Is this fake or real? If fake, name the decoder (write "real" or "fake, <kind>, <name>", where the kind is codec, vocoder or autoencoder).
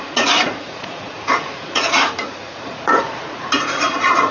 fake, vocoder, Vocos